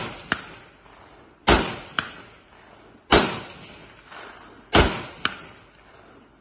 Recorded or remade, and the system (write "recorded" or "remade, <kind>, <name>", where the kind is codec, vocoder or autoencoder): recorded